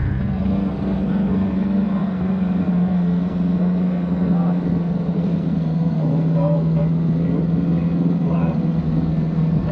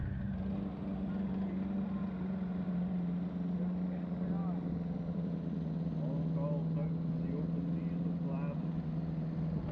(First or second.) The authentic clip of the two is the second